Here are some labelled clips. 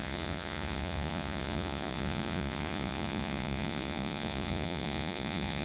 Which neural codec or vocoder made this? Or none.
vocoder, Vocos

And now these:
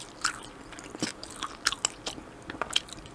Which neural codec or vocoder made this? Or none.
none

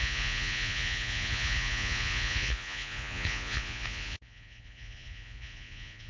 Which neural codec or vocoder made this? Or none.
vocoder, Vocos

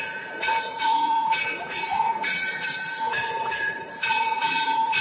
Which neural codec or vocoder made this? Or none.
vocoder, Vocos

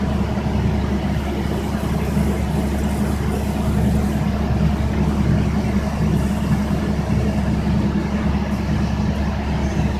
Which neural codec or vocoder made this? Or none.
none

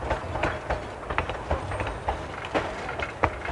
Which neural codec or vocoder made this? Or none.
none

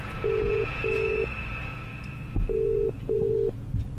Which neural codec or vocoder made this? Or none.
vocoder, Vocos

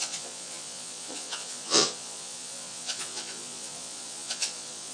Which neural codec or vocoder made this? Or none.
vocoder, Vocos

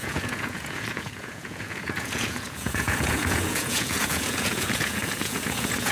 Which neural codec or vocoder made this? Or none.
vocoder, Vocos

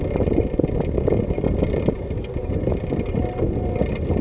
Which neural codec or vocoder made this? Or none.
none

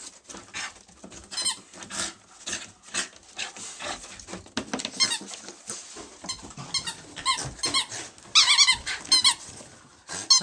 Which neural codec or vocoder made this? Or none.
none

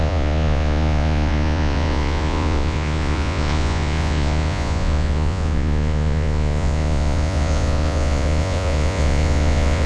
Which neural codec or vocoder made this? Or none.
vocoder, Vocos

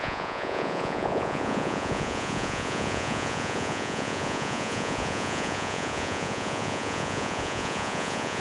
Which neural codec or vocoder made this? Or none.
vocoder, Vocos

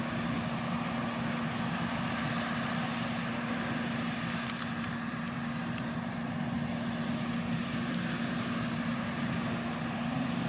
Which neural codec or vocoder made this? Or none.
none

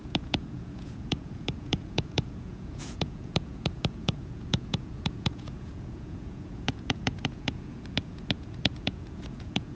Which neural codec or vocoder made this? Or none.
vocoder, Vocos